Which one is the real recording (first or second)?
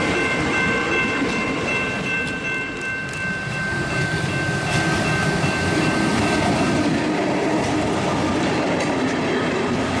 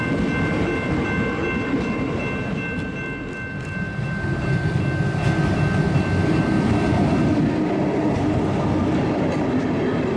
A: second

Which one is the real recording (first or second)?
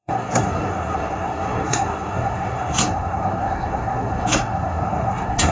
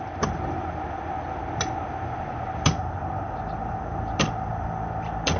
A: second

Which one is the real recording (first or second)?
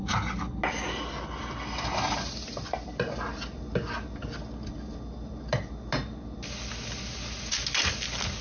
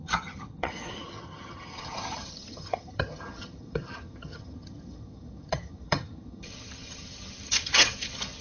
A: first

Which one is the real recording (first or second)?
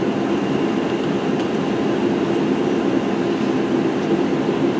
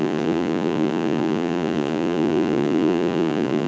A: first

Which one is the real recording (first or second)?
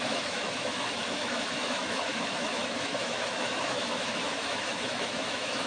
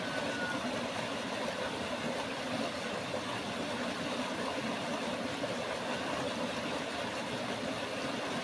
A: second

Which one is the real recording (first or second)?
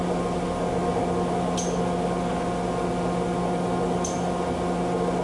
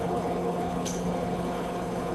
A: first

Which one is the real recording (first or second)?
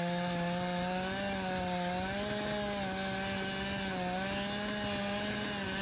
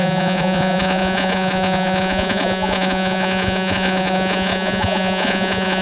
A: first